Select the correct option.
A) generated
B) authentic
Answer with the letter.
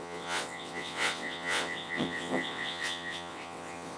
A